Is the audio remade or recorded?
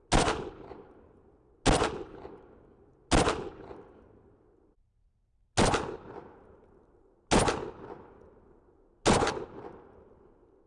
recorded